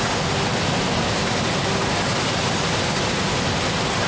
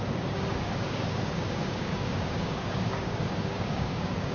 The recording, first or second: first